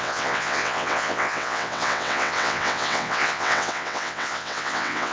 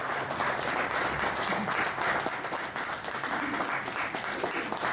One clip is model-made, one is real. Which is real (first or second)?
second